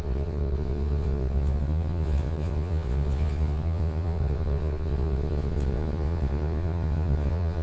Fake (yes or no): yes